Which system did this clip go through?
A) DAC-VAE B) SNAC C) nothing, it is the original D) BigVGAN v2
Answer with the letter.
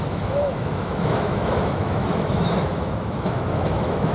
A